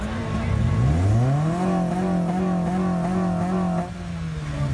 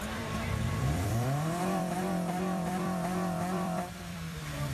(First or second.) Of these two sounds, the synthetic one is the second